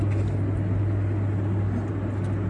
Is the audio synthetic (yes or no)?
no